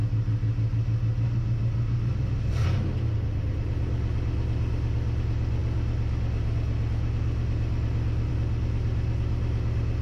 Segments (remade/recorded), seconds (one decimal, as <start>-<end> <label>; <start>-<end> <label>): 0.0-10.0 recorded